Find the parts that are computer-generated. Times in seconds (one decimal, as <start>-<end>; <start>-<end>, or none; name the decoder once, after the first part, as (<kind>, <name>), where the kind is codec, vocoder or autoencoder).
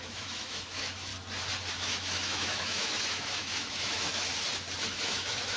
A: 0.0-1.1 (autoencoder, DAC-VAE); 1.7-4.3; 4.9-5.6